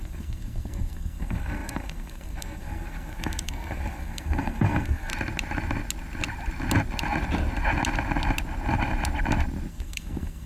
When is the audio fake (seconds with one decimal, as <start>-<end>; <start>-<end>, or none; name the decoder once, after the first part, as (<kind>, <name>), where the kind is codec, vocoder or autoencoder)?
0.0-5.1 (codec, SNAC); 9.7-10.5